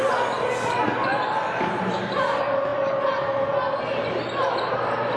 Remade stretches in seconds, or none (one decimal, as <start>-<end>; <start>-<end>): none